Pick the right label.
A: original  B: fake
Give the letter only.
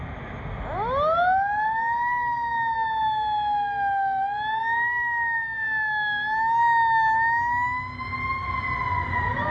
A